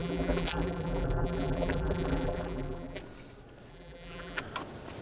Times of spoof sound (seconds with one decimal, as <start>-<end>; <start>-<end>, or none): 0.0-3.0; 3.7-4.4